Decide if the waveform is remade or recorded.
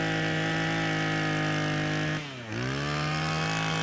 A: recorded